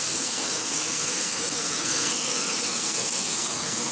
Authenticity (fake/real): fake